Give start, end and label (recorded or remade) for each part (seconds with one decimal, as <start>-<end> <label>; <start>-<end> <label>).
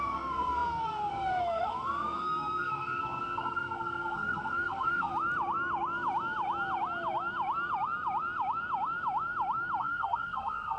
0.0-5.1 remade; 5.1-9.8 recorded; 9.8-10.8 remade